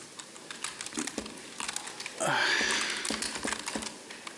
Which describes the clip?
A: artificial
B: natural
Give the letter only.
B